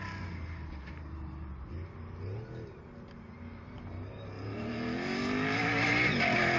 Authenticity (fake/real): real